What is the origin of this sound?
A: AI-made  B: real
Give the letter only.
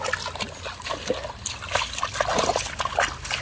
B